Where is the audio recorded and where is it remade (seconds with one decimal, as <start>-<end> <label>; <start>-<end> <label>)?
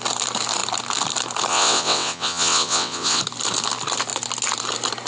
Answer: 0.0-1.5 recorded; 1.5-3.2 remade; 3.2-5.1 recorded